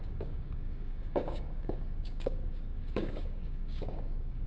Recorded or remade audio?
remade